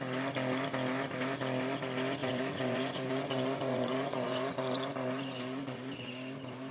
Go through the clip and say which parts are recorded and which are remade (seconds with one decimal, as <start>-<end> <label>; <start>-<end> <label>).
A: 0.0-2.2 recorded; 2.2-6.1 remade; 6.1-6.7 recorded